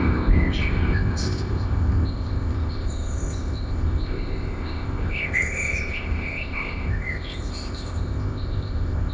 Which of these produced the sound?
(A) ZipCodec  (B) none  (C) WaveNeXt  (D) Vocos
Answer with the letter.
A